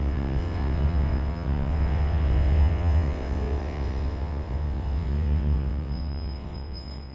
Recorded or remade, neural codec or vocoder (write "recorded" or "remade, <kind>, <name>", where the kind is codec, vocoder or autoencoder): remade, vocoder, WaveNeXt